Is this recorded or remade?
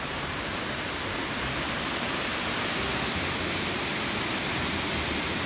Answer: remade